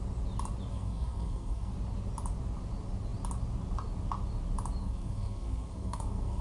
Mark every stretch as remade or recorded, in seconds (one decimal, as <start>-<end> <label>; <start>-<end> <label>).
0.0-0.7 recorded; 0.7-1.7 remade; 1.7-4.8 recorded; 4.8-6.4 remade